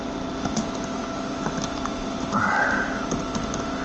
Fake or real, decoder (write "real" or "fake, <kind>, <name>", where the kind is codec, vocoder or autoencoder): real